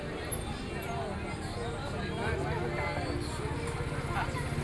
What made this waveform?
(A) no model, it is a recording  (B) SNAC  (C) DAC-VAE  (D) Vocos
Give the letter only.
A